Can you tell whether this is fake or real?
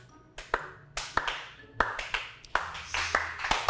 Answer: real